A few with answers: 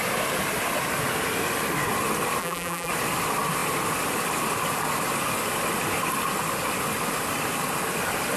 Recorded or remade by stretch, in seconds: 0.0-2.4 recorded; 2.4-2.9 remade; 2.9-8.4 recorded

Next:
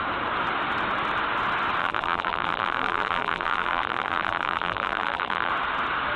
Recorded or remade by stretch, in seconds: 0.0-1.8 recorded; 1.8-5.5 remade; 5.5-6.2 recorded

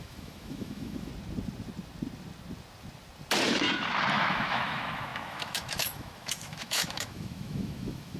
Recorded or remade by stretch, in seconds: 0.0-1.1 remade; 1.1-4.1 recorded; 4.1-8.2 remade

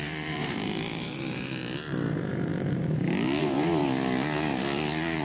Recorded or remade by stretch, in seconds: 0.0-1.6 remade; 1.6-2.1 recorded; 2.1-2.5 remade; 2.5-3.4 recorded; 3.4-3.8 remade; 3.8-5.2 recorded

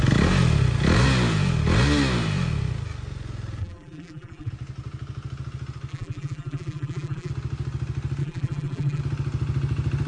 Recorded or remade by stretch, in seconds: 0.0-3.6 recorded; 3.6-4.5 remade; 4.5-5.9 recorded; 5.9-7.3 remade; 7.3-8.2 recorded; 8.2-9.0 remade; 9.0-10.1 recorded

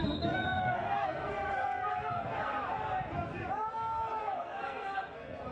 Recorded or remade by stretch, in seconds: 0.0-2.6 remade; 2.6-4.2 recorded; 4.2-5.5 remade